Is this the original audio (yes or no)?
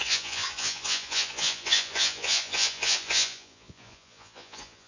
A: no